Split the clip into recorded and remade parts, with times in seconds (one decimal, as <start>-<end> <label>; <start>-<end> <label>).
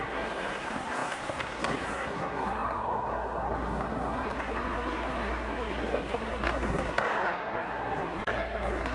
0.0-8.9 remade